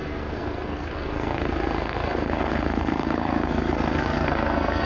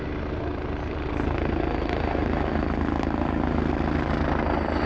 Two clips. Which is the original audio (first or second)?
second